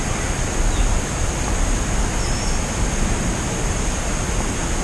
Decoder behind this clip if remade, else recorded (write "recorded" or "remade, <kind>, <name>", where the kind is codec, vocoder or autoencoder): recorded